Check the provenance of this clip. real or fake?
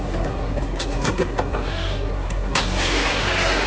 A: fake